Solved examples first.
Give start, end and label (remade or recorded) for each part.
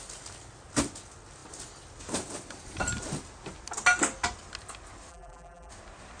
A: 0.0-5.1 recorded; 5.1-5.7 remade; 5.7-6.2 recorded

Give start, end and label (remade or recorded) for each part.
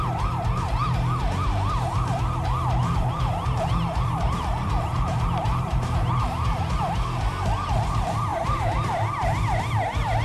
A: 0.0-2.8 recorded; 2.8-6.6 remade; 6.6-8.3 recorded; 8.3-9.6 remade; 9.6-10.2 recorded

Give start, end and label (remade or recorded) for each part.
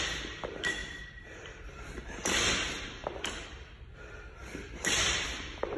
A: 0.0-0.8 recorded; 0.8-1.7 remade; 1.7-4.4 recorded; 4.4-5.8 remade